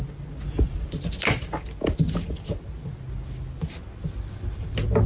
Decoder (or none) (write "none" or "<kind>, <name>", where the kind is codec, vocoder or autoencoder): none